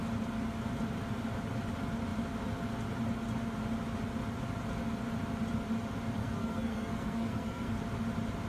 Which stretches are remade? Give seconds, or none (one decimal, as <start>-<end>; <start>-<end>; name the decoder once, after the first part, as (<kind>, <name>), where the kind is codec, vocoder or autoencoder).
6.2-7.7 (codec, SNAC)